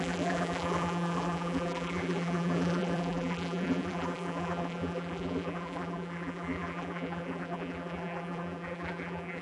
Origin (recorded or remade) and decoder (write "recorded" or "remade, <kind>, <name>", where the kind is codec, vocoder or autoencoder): remade, vocoder, BigVGAN v2